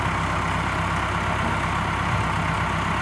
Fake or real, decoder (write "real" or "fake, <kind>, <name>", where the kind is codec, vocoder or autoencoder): real